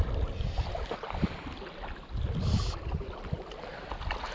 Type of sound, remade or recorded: recorded